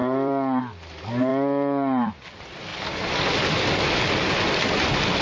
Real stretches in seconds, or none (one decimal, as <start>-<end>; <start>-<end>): 0.6-1.3; 2.1-5.2